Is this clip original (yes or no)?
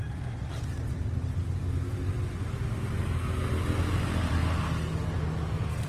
yes